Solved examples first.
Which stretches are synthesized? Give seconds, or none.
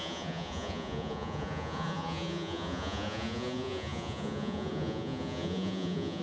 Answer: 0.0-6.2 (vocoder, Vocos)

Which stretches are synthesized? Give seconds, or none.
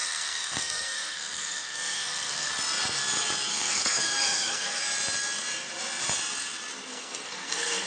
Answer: 0.0-2.5 (codec, SNAC); 3.5-4.8; 6.9-7.9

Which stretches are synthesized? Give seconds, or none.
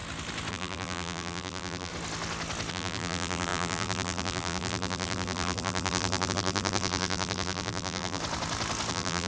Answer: 0.5-1.9 (vocoder, BigVGAN v2); 2.7-8.2; 8.9-9.3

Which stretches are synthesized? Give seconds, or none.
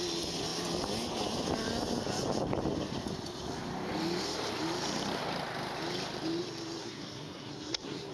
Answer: 6.8-8.1 (codec, SNAC)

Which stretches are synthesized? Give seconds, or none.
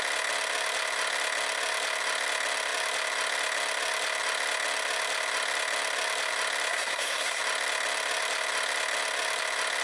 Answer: 6.7-7.4 (codec, SNAC)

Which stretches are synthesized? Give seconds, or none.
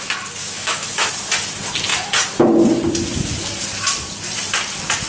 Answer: 0.4-1.1 (autoencoder, DAC-VAE)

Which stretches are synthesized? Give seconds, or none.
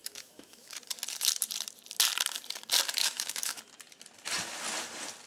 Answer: 0.0-0.7 (autoencoder, DAC-VAE); 3.0-3.6